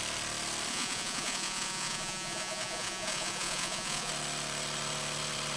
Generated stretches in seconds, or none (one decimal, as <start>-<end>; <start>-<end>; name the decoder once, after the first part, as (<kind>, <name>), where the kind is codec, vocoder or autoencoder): 0.7-4.1 (vocoder, Vocos)